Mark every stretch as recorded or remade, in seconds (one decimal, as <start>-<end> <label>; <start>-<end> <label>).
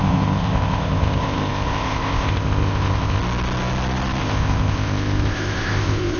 0.0-3.2 remade; 3.2-4.2 recorded; 4.2-6.2 remade